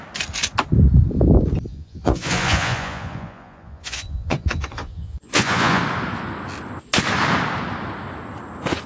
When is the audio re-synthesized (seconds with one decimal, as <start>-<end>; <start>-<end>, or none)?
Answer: 1.7-5.8